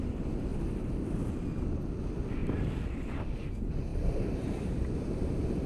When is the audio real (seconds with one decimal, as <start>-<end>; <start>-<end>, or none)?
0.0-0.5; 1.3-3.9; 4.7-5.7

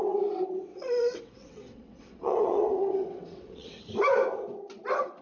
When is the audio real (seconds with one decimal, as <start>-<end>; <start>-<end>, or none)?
0.0-0.7; 3.8-5.2

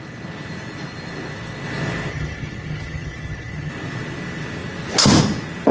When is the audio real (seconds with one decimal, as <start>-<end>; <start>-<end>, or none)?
0.0-2.1; 3.7-5.7